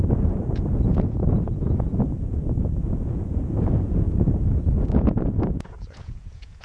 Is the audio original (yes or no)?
no